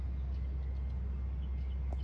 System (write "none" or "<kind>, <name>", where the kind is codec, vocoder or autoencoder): none